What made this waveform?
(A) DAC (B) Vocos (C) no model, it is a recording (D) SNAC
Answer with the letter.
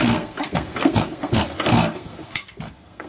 D